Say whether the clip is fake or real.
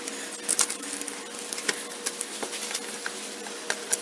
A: real